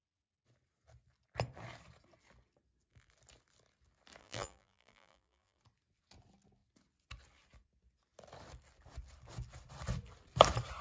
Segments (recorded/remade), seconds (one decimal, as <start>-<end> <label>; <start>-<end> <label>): 0.0-4.2 recorded; 4.2-5.6 remade; 5.6-10.8 recorded